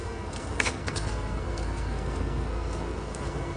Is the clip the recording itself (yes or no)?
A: no